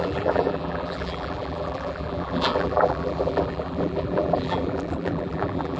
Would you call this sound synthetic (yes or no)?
yes